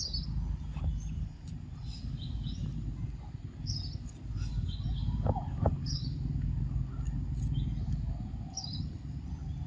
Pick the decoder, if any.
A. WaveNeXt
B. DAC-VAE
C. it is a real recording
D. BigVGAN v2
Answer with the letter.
C